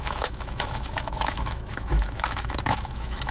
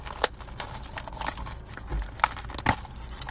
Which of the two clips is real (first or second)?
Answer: second